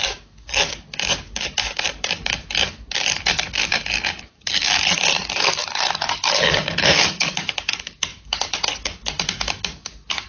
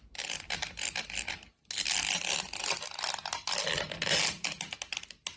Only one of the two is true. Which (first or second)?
second